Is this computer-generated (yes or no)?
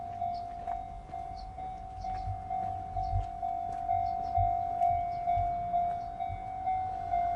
no